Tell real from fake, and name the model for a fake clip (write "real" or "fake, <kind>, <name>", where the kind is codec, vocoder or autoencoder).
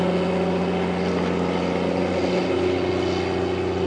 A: real